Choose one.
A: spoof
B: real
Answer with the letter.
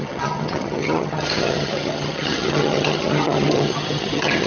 A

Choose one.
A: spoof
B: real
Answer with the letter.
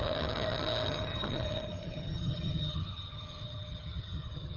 A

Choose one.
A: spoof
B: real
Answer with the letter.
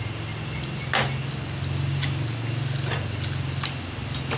B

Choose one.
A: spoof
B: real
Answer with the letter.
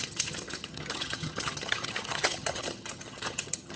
A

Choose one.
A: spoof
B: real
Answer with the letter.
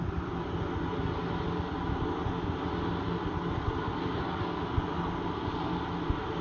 B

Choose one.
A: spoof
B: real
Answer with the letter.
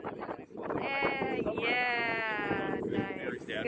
B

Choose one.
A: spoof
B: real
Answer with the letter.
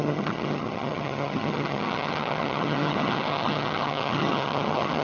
A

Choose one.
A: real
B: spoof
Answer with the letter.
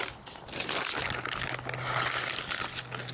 A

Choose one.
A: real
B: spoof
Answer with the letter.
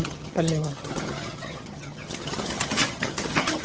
B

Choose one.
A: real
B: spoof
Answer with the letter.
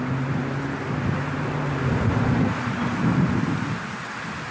A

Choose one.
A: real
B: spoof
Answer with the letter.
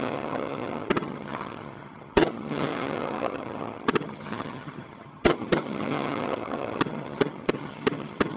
B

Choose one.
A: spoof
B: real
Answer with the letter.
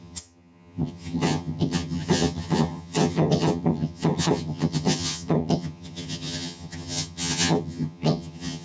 A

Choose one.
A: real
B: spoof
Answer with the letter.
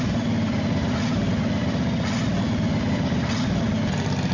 A